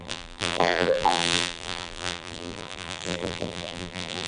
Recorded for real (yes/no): no